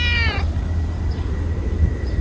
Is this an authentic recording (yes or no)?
yes